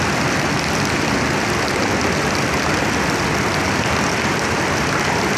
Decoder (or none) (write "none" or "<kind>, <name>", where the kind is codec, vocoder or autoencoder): none